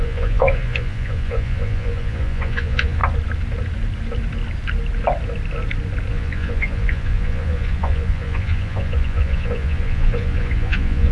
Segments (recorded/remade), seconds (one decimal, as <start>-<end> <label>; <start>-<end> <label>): 0.0-3.0 remade; 3.0-6.1 recorded; 6.1-11.1 remade